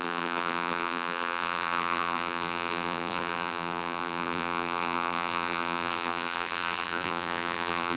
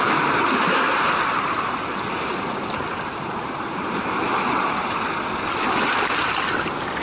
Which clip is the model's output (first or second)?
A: first